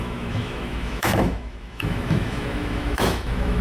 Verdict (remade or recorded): remade